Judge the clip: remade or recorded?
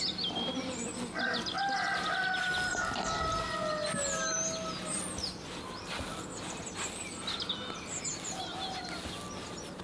recorded